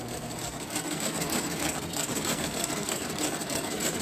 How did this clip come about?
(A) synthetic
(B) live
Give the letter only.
A